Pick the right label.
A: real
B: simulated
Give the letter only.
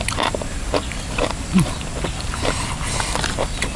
A